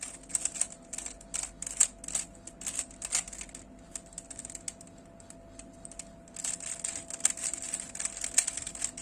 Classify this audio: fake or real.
real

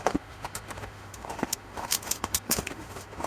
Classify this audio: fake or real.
fake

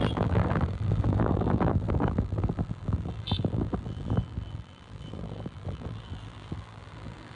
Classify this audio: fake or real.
fake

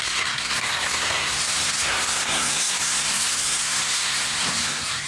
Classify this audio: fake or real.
fake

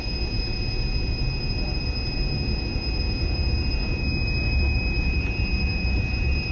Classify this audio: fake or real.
fake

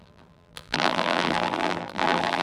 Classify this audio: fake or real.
fake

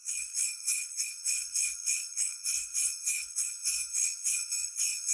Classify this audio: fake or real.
fake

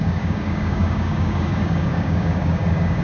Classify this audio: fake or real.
fake